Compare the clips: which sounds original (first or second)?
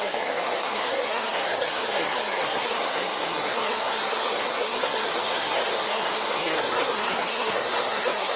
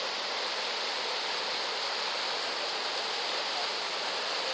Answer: second